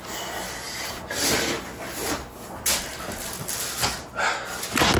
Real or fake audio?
real